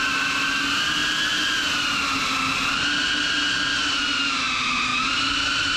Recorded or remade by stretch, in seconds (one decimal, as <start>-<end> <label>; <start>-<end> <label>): 0.0-5.8 recorded